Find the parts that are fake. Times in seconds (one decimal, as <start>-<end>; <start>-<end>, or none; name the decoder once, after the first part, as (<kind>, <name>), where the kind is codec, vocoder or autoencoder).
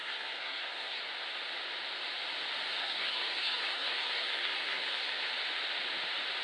0.0-1.0 (codec, SNAC); 2.8-5.3